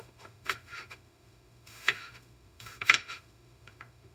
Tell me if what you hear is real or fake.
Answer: fake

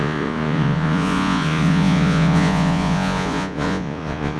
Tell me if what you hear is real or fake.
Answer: fake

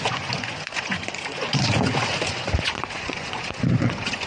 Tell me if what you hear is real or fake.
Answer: fake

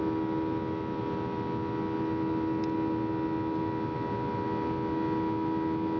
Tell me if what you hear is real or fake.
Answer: real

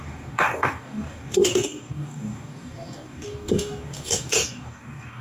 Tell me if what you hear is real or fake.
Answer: fake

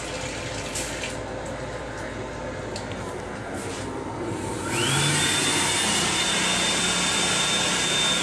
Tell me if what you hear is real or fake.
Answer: real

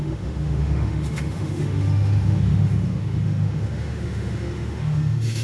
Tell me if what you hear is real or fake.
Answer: fake